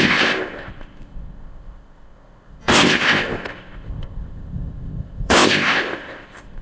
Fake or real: fake